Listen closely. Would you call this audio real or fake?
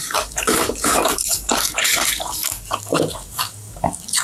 fake